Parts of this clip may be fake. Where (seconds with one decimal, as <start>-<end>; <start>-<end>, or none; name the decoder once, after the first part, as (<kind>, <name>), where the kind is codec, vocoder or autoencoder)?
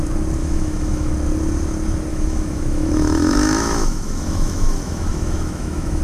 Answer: 0.4-1.1 (autoencoder, DAC-VAE); 2.1-6.0